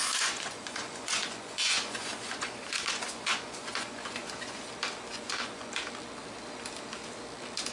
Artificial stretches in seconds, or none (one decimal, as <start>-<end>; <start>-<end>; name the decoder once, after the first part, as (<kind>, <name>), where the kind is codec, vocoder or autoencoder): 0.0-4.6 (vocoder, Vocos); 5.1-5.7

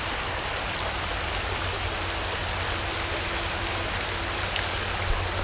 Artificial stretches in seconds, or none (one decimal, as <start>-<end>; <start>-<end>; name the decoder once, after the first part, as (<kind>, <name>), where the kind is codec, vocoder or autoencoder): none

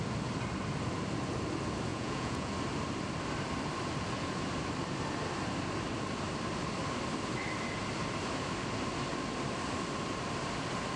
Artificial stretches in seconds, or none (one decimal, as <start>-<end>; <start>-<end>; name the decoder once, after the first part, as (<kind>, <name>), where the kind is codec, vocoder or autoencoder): 1.9-2.5 (vocoder, Vocos)

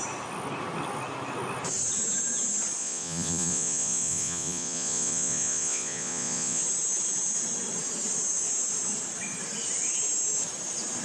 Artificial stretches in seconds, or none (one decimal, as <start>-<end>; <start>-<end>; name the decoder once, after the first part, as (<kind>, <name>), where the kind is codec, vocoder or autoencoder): 2.8-6.6 (vocoder, Vocos)

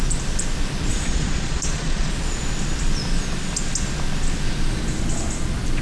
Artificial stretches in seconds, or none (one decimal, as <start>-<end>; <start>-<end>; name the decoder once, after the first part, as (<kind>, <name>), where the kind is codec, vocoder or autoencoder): 0.9-2.1 (vocoder, Vocos)

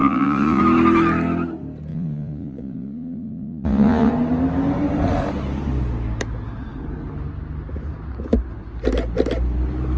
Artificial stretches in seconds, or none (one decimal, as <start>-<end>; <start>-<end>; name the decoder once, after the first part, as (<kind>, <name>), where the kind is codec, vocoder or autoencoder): 0.0-0.6 (vocoder, Vocos); 1.9-4.1